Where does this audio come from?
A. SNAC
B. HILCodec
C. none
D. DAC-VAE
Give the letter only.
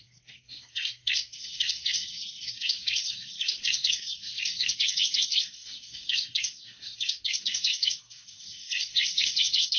A